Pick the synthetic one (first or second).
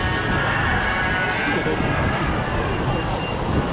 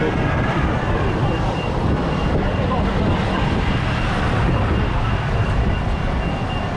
second